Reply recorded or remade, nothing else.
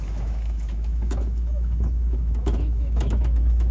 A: remade